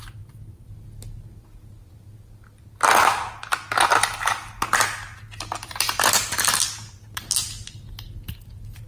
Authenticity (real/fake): real